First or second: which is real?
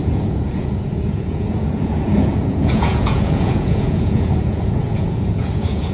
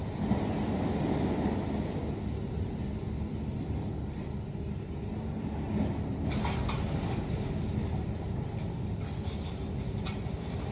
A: second